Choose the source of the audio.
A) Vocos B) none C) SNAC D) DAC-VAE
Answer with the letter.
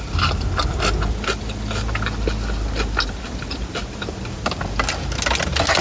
B